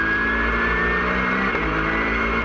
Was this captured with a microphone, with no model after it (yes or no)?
yes